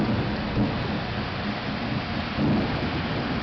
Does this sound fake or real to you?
real